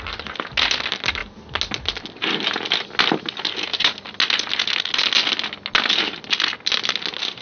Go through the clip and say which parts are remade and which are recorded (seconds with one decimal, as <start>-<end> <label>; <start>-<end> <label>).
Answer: 0.0-7.4 recorded